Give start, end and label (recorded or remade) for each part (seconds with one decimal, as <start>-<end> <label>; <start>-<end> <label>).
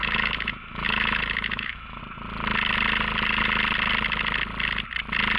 0.0-2.0 remade; 2.0-5.4 recorded